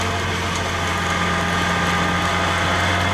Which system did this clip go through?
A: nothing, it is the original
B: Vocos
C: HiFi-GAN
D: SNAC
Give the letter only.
A